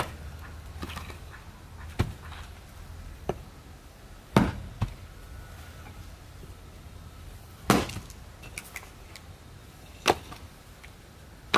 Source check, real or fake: real